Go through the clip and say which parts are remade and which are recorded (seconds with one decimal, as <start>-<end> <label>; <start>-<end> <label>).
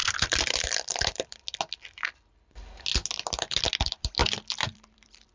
0.0-1.4 remade; 1.4-4.2 recorded; 4.2-5.3 remade